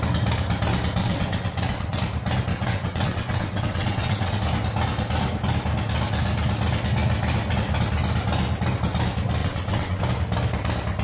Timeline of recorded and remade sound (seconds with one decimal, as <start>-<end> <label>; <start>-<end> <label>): 0.0-1.0 recorded; 1.0-2.0 remade; 2.0-2.5 recorded; 2.5-4.4 remade; 4.4-9.4 recorded; 9.4-10.0 remade; 10.0-11.0 recorded

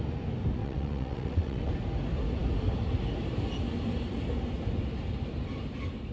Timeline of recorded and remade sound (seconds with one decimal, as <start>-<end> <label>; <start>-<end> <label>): 0.0-0.6 recorded; 0.6-1.7 remade; 1.7-6.1 recorded

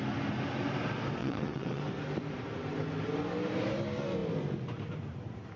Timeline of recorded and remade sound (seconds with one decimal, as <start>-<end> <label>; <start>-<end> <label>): 0.0-1.2 recorded; 1.2-1.8 remade; 1.8-5.6 recorded

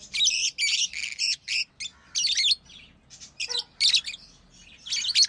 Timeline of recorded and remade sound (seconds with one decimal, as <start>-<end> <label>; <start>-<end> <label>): 0.0-5.3 recorded

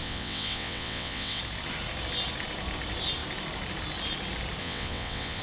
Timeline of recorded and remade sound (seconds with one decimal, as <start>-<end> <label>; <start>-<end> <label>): 0.0-1.4 remade; 1.4-4.6 recorded; 4.6-5.4 remade

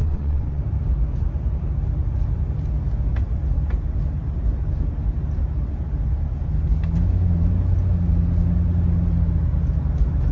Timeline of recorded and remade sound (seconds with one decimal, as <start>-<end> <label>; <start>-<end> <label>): 0.0-0.6 remade; 0.6-10.3 recorded